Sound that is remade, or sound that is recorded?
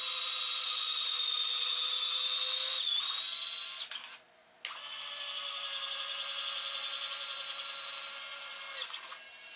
recorded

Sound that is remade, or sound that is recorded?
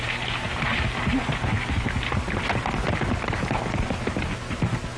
recorded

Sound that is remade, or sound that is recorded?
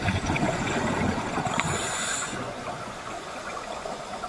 remade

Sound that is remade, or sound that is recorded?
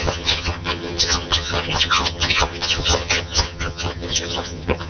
remade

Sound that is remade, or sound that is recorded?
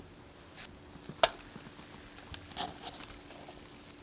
recorded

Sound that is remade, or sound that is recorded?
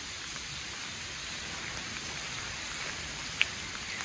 remade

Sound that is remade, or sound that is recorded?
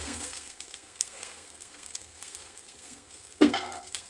remade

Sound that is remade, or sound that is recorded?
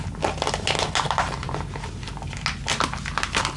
recorded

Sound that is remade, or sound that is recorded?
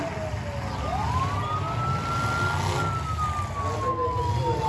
recorded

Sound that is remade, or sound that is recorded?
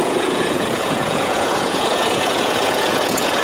remade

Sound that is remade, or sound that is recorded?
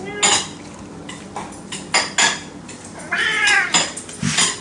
recorded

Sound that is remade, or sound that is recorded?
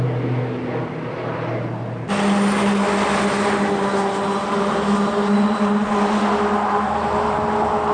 recorded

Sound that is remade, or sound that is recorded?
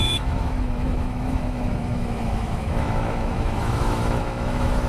remade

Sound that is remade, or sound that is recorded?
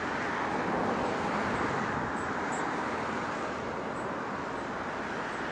recorded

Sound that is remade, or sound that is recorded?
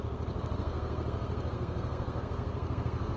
remade